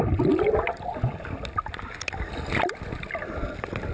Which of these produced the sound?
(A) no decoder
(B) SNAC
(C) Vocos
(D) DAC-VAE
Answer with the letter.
A